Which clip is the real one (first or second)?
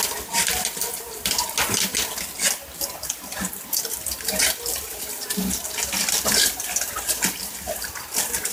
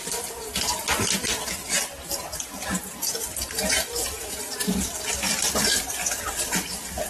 first